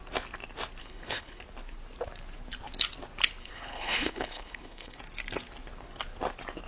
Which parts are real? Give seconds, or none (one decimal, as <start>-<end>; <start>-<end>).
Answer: 0.0-0.8; 1.4-3.4; 5.0-6.7